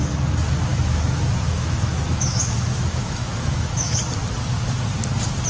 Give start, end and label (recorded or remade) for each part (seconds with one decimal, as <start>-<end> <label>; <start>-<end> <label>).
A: 0.0-0.7 recorded; 0.7-4.0 remade; 4.0-5.5 recorded